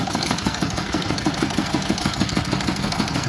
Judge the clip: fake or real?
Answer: fake